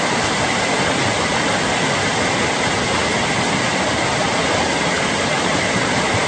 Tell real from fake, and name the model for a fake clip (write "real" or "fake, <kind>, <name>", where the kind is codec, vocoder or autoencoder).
real